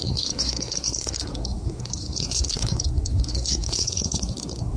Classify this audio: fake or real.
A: fake